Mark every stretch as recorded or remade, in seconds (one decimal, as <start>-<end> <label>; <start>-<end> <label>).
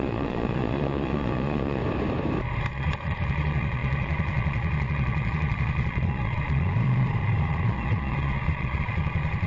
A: 0.0-1.8 remade; 1.8-2.7 recorded; 2.7-9.5 remade